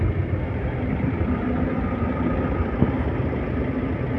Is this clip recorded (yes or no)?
yes